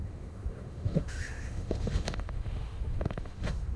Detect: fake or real fake